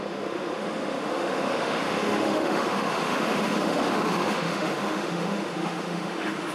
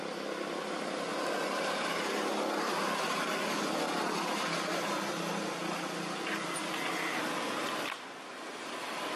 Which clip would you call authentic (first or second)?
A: second